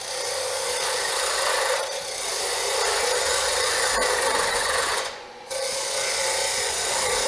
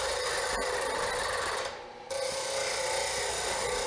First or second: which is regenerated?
first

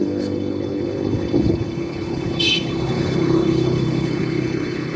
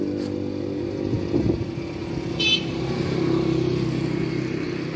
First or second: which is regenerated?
first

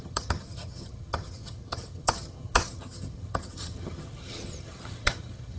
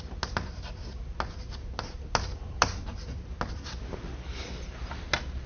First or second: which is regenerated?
first